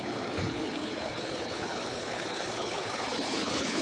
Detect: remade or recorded remade